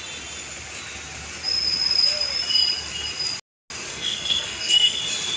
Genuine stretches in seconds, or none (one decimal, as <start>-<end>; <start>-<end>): 0.0-3.9; 5.0-5.4